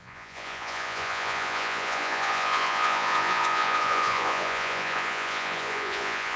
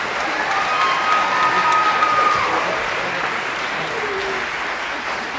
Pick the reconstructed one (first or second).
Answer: first